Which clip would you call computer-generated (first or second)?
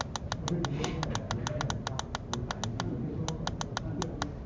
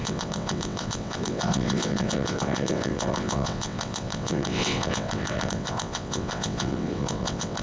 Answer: second